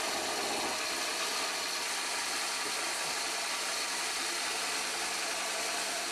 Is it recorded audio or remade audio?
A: recorded